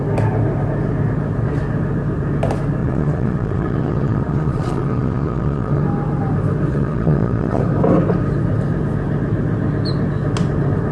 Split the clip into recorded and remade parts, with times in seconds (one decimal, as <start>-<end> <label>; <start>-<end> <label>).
0.0-2.8 recorded; 2.8-5.8 remade; 5.8-6.7 recorded; 6.7-7.6 remade; 7.6-10.9 recorded